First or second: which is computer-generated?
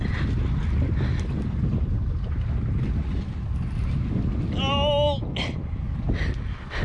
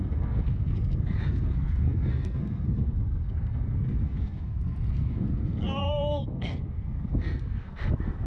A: second